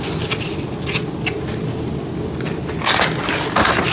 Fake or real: real